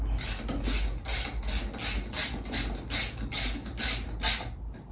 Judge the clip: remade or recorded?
recorded